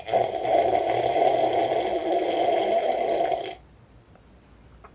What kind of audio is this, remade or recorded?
recorded